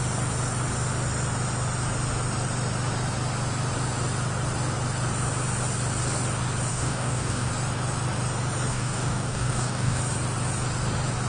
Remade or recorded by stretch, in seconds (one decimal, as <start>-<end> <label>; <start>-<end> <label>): 0.0-6.7 recorded; 6.7-7.5 remade; 7.5-8.7 recorded; 8.7-10.0 remade; 10.0-11.3 recorded